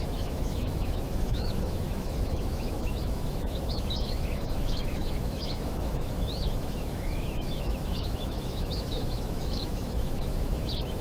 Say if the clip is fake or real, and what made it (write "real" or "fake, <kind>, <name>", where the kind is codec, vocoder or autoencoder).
fake, autoencoder, DAC-VAE